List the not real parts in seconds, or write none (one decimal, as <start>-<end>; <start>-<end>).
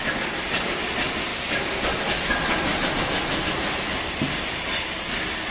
none